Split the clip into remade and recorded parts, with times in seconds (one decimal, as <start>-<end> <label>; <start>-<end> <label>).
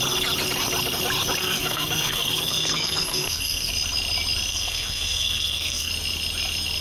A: 0.0-1.4 recorded; 1.4-3.7 remade; 3.7-4.5 recorded; 4.5-5.9 remade; 5.9-6.8 recorded